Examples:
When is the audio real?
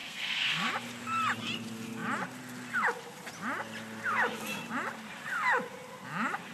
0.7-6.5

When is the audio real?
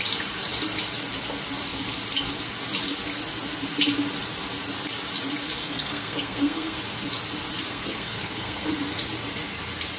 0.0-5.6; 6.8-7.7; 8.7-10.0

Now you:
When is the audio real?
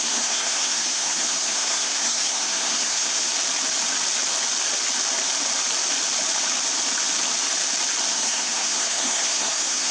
3.3-8.1